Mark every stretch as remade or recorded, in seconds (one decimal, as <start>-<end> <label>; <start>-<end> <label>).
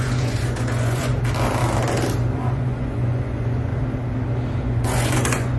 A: 0.0-1.1 remade; 1.1-2.4 recorded; 2.4-3.7 remade; 3.7-4.6 recorded; 4.6-5.6 remade